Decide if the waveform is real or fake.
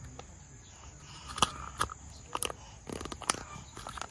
real